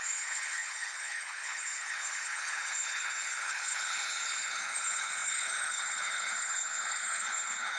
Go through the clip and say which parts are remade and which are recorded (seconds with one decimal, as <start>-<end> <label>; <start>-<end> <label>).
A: 0.0-7.8 remade